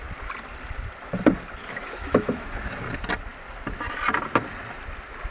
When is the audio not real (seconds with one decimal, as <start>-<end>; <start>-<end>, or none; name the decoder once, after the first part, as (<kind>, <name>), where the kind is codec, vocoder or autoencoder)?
1.6-2.5 (autoencoder, DAC-VAE)

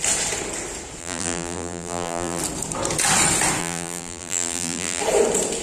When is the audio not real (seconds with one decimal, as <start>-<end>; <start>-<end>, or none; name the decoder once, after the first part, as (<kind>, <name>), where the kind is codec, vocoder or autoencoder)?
1.0-2.4 (vocoder, BigVGAN v2); 3.6-5.0

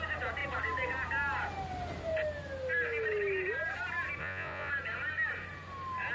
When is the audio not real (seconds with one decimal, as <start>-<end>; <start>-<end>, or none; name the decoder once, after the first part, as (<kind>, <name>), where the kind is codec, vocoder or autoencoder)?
4.2-4.7 (vocoder, Vocos)

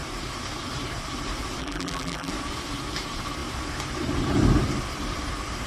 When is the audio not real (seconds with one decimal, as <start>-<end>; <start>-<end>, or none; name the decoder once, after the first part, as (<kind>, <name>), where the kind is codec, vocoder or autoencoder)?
1.6-2.3 (vocoder, BigVGAN v2)

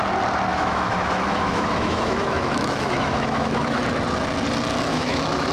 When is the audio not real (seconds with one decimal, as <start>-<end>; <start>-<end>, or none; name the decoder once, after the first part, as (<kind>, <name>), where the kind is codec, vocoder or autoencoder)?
0.5-3.8 (autoencoder, DAC-VAE); 4.9-5.5